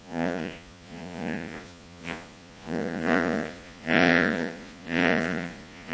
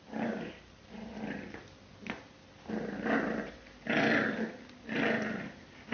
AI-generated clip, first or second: first